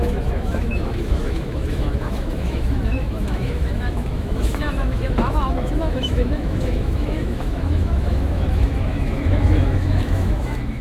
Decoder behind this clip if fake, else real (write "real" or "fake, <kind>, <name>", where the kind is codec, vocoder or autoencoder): fake, autoencoder, DAC-VAE